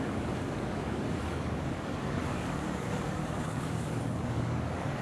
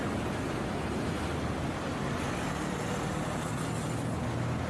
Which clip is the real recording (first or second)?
second